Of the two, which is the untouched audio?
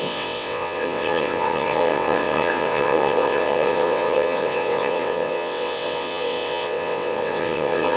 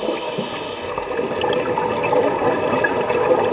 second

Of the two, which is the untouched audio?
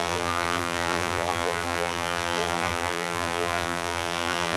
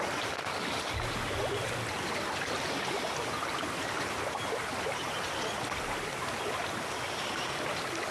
second